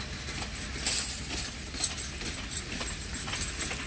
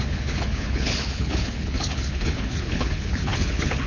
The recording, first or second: first